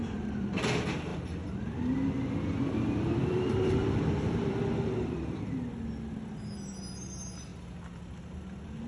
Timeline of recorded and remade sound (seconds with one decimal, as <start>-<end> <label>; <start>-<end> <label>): 0.0-0.6 remade; 0.6-1.1 recorded; 1.1-5.6 remade; 5.6-8.9 recorded